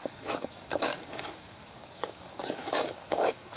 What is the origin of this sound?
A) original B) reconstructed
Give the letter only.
B